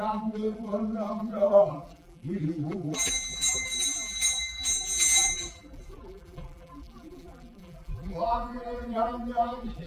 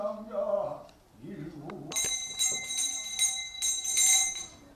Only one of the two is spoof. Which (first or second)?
first